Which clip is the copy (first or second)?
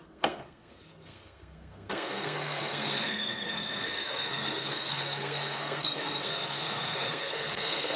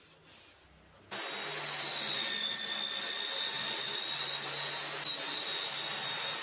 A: first